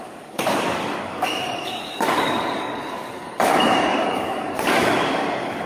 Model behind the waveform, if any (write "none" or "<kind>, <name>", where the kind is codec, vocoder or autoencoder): codec, DAC